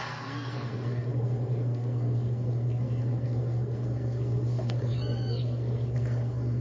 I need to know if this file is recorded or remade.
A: remade